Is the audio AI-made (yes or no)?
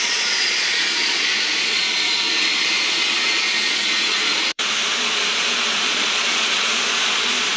yes